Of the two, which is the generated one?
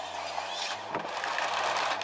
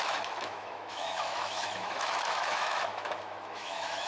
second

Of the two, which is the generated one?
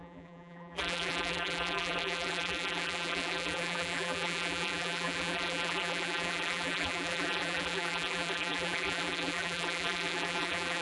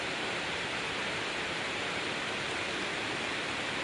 first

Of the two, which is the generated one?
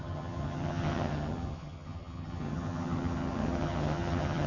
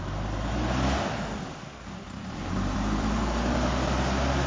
first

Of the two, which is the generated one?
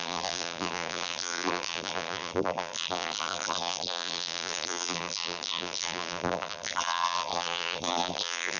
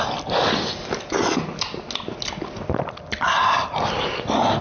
first